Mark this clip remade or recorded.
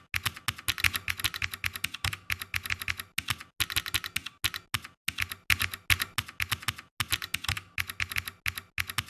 recorded